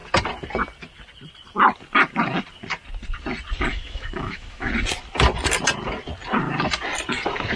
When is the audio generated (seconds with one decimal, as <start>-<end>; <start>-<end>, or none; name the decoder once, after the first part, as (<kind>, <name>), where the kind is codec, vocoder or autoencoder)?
3.7-4.7 (autoencoder, DAC-VAE)